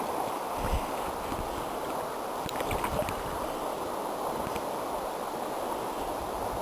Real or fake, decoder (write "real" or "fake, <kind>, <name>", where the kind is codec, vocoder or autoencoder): real